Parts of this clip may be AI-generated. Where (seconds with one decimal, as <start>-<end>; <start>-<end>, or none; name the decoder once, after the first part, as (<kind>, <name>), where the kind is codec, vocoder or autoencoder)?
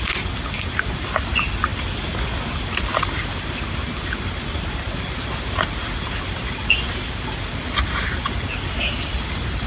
none